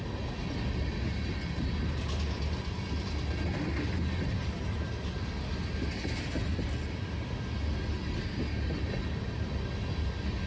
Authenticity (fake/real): real